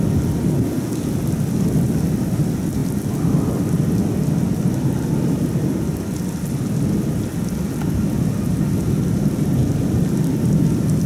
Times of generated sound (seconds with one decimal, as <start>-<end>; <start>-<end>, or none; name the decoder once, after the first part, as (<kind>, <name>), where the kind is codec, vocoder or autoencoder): none